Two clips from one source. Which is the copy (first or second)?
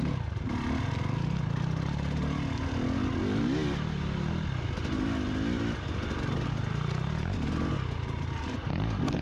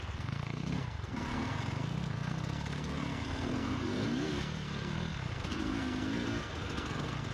second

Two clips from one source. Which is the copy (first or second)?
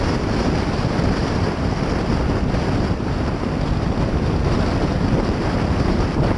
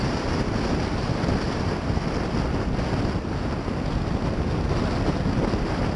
first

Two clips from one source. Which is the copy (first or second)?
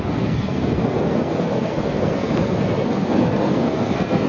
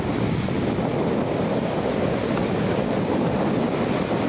first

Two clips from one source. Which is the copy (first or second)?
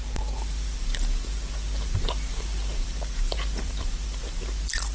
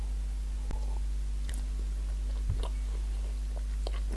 first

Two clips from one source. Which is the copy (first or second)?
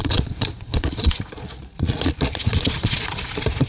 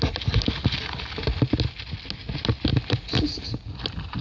first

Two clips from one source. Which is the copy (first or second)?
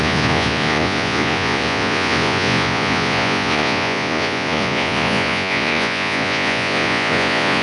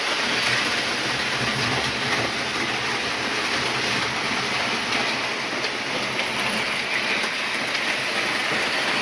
first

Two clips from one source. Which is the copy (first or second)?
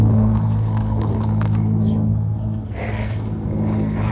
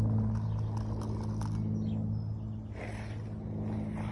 first